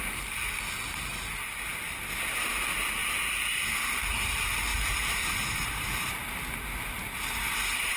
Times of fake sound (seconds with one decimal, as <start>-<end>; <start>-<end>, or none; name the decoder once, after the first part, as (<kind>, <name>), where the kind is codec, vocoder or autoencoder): 4.7-6.1 (vocoder, BigVGAN v2)